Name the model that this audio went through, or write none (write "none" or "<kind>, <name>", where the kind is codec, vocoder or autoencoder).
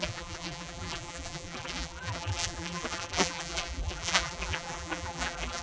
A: vocoder, BigVGAN v2